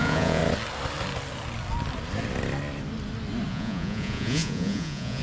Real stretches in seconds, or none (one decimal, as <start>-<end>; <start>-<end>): 0.4-3.5